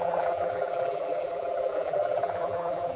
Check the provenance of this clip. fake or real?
fake